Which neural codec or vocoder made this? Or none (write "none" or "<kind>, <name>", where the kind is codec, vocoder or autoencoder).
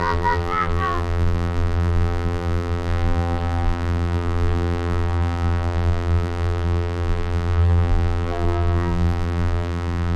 vocoder, BigVGAN v2